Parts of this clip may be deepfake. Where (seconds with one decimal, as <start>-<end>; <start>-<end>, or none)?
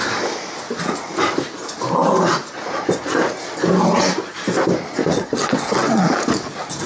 5.0-6.0